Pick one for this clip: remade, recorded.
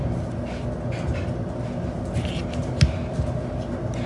recorded